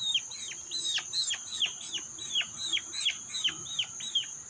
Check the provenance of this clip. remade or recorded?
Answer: recorded